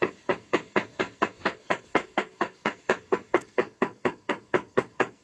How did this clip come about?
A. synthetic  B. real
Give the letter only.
A